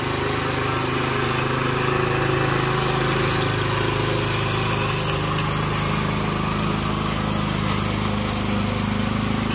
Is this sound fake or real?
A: real